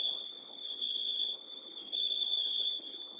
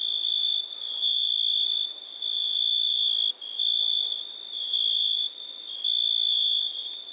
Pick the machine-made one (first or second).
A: first